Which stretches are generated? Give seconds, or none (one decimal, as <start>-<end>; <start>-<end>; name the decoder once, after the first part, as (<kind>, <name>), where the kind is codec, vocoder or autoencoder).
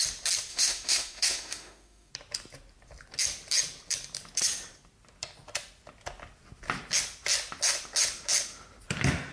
0.5-2.1 (autoencoder, DAC-VAE)